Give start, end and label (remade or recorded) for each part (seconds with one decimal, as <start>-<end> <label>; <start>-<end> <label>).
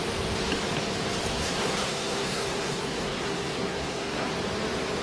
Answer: 0.0-1.3 recorded; 1.3-4.3 remade; 4.3-5.0 recorded